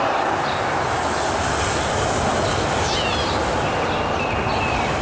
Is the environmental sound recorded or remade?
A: recorded